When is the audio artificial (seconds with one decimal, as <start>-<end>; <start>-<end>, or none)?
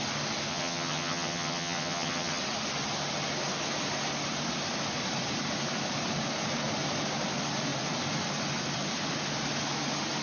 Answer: 0.5-2.4